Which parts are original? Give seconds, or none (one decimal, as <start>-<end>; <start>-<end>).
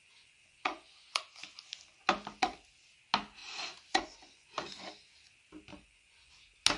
1.2-3.4; 4.5-5.7; 6.3-6.8